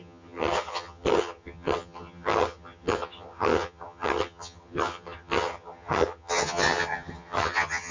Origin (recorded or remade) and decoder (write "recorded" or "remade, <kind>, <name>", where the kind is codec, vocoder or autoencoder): remade, vocoder, HiFi-GAN